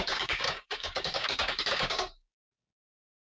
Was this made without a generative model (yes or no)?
no